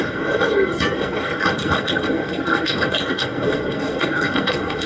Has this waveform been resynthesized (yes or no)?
yes